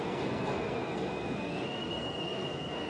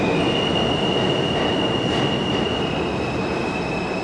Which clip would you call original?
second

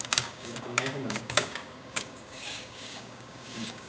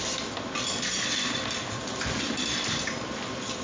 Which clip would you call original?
second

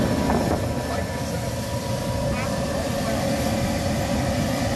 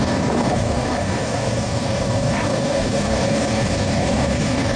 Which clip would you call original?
first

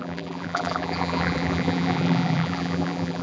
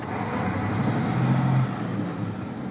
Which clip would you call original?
second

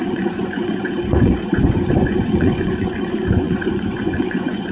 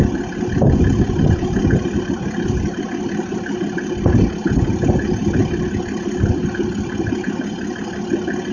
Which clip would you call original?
second